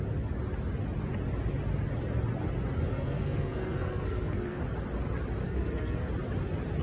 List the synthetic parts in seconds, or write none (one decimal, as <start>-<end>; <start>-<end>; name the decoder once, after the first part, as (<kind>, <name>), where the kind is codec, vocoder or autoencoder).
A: 2.9-4.6 (codec, SNAC); 5.4-6.1